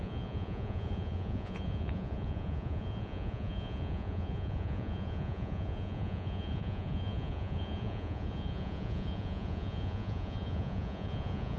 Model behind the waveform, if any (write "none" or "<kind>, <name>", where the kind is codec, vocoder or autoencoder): vocoder, Vocos